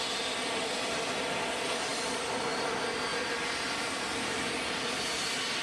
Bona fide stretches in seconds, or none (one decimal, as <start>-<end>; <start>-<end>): 0.0-5.6